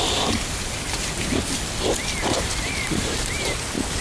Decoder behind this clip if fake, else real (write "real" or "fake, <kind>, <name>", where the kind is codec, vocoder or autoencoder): real